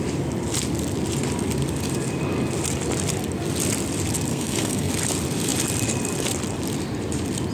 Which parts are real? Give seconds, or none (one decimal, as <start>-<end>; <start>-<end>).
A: 0.0-4.3; 4.9-7.5